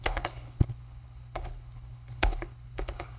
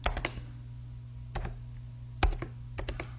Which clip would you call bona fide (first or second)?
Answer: second